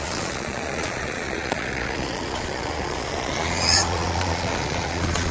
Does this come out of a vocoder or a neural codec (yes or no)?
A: yes